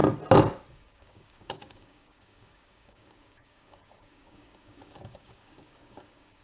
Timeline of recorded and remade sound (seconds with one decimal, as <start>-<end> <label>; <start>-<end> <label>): 0.0-0.7 recorded; 0.7-6.4 remade